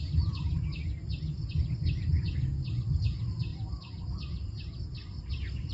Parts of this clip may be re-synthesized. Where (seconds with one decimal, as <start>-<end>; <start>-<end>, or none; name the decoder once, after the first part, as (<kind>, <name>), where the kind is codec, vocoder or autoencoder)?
0.0-0.8 (vocoder, BigVGAN v2); 1.5-5.7